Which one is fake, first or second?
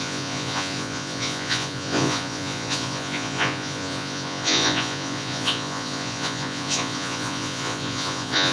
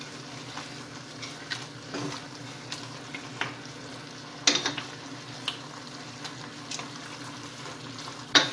first